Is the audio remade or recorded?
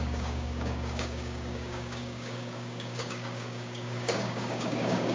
remade